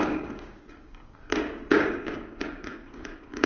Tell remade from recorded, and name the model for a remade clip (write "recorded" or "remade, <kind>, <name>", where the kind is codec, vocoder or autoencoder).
remade, codec, DAC